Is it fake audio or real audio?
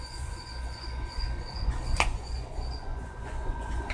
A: fake